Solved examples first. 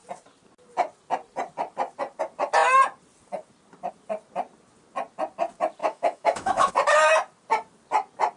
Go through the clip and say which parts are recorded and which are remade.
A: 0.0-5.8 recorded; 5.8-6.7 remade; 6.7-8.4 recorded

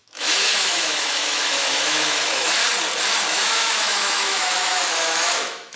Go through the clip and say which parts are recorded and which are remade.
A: 0.0-2.6 remade; 2.6-3.3 recorded; 3.3-5.8 remade

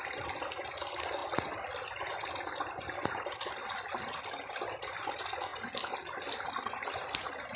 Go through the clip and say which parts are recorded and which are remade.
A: 0.0-7.6 recorded